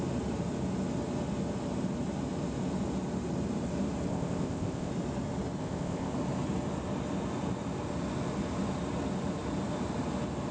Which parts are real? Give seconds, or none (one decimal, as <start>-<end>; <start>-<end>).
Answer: 0.0-4.1; 4.9-5.6; 6.1-10.5